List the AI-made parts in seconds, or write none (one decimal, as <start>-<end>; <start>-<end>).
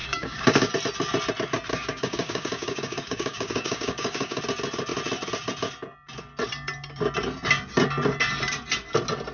0.0-0.7; 1.7-4.4